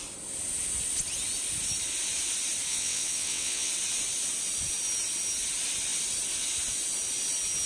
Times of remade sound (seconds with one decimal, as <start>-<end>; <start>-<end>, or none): 2.7-3.7